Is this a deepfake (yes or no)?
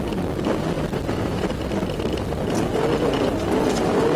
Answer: no